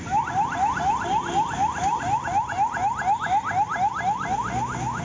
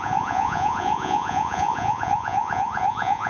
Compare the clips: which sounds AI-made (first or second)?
second